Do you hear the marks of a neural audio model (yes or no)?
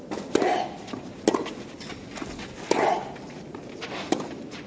no